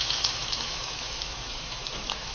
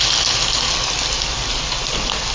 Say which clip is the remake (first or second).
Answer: first